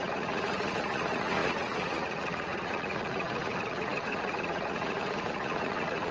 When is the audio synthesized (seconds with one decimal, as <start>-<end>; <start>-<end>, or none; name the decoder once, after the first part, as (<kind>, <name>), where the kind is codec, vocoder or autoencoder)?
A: 0.0-6.1 (vocoder, Vocos)